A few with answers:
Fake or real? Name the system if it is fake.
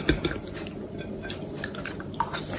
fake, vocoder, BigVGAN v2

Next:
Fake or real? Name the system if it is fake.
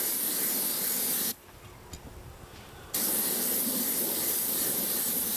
real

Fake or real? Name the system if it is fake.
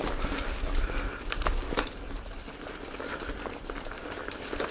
fake, vocoder, BigVGAN v2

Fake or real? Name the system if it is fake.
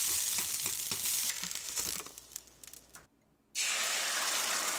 real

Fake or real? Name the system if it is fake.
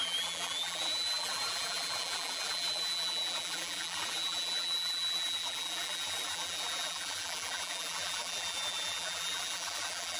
fake, vocoder, BigVGAN v2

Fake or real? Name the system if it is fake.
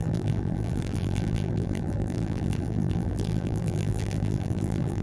fake, vocoder, BigVGAN v2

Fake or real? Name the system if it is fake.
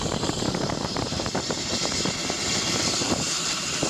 fake, vocoder, BigVGAN v2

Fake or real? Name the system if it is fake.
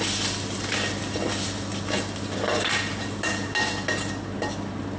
fake, vocoder, BigVGAN v2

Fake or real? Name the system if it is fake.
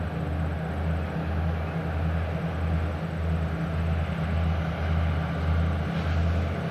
real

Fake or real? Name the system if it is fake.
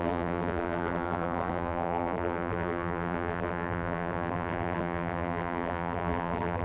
fake, vocoder, BigVGAN v2